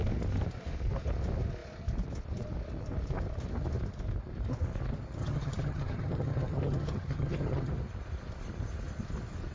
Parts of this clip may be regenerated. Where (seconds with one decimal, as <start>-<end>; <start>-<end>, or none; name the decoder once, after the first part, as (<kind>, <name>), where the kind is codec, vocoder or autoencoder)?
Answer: 5.2-7.7 (vocoder, HiFi-GAN)